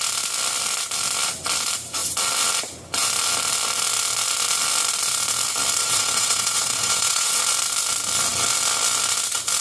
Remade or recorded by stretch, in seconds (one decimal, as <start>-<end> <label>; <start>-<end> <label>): 0.0-5.8 recorded; 5.8-7.4 remade; 7.4-9.6 recorded